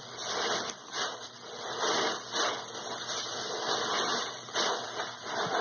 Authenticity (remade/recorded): recorded